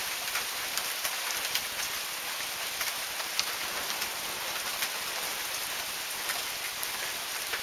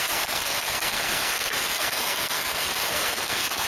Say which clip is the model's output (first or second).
second